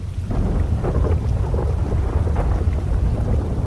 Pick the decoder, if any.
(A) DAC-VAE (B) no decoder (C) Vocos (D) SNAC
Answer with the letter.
B